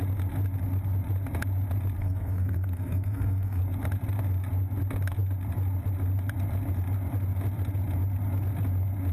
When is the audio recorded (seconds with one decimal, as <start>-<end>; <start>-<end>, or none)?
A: 0.0-2.0; 3.6-9.1